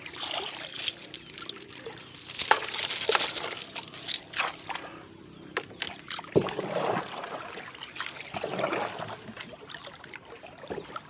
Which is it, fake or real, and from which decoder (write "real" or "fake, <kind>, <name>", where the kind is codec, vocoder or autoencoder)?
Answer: real